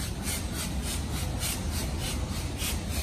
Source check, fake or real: real